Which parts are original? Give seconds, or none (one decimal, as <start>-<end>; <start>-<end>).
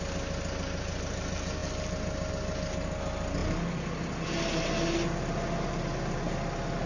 0.0-6.9